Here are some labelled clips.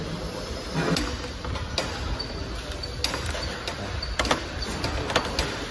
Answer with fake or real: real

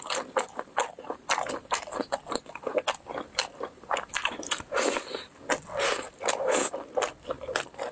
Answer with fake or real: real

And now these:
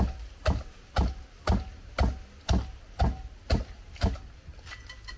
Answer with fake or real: real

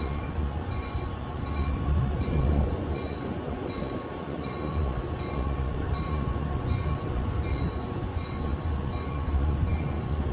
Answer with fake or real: fake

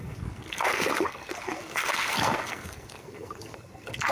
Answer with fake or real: fake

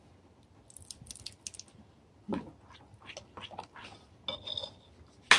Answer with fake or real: real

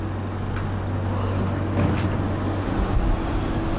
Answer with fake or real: real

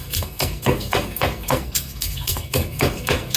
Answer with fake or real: fake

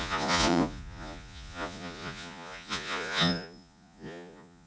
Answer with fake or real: fake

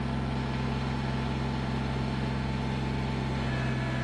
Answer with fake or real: real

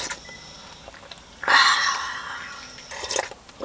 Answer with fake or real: real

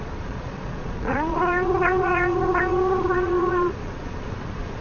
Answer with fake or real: fake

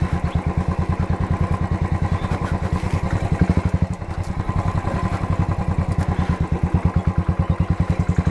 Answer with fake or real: real